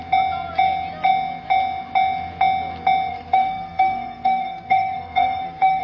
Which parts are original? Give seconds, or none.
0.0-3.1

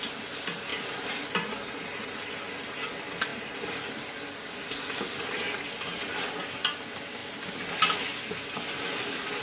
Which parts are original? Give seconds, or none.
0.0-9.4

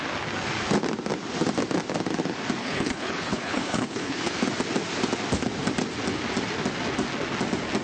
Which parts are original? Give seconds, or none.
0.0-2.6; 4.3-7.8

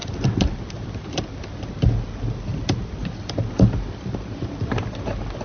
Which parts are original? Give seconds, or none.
1.2-2.5; 3.7-5.4